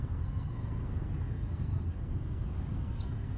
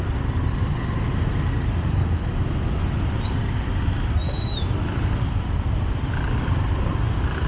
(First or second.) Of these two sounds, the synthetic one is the first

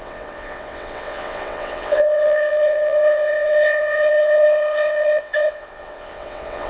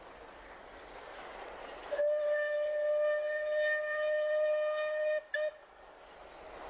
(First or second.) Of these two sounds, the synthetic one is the first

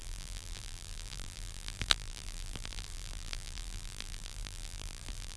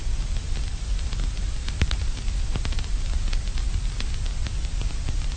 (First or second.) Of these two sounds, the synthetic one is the first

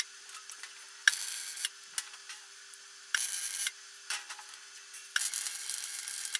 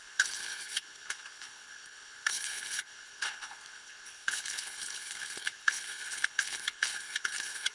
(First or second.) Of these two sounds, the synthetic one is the second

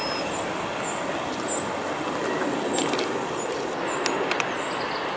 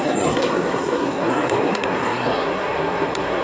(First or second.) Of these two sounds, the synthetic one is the second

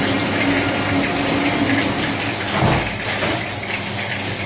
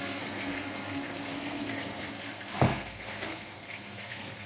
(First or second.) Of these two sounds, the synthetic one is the second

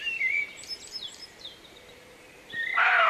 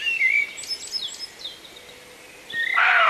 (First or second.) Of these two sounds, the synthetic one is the first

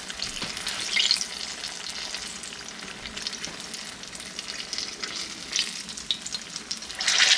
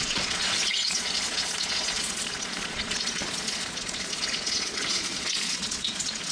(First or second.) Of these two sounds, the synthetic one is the second